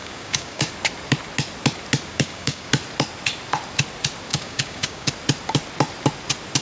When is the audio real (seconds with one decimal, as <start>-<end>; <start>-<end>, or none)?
0.7-2.1; 2.7-4.3; 5.1-6.6